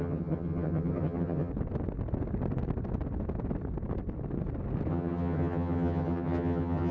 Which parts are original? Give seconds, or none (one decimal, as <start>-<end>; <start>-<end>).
1.5-4.9